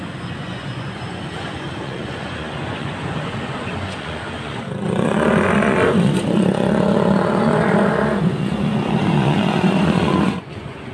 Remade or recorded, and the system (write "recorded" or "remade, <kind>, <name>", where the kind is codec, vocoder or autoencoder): remade, vocoder, Vocos